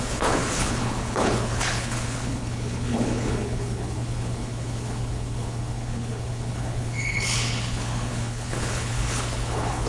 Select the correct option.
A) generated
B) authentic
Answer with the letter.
A